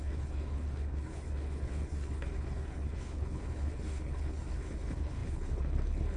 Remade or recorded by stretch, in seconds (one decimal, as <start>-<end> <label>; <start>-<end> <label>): 0.0-6.2 remade